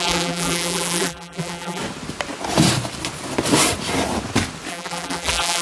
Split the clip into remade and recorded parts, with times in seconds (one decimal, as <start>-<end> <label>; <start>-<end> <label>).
0.0-1.8 remade; 1.8-4.7 recorded; 4.7-5.6 remade